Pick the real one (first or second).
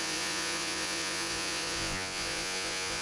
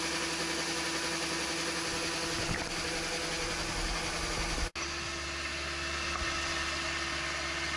second